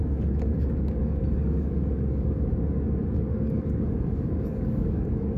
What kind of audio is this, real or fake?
fake